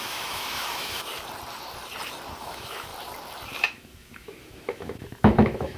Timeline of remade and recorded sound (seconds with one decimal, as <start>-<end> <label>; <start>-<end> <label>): 0.0-1.1 remade; 1.1-2.4 recorded; 2.4-2.9 remade; 2.9-3.6 recorded; 3.6-5.8 remade